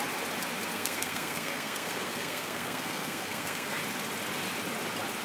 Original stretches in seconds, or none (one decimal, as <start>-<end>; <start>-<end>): 0.0-0.7; 3.8-5.2